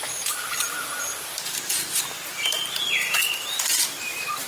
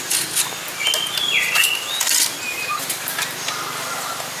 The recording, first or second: second